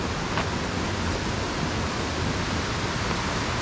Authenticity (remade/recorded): recorded